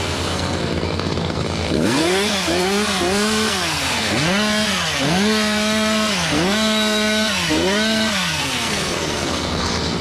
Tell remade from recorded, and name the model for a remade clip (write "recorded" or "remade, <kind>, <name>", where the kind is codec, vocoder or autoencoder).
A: remade, codec, SNAC